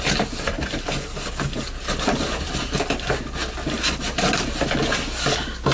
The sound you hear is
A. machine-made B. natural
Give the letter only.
B